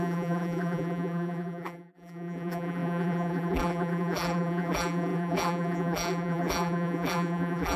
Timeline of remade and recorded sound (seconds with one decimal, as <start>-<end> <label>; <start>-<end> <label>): 0.0-7.8 remade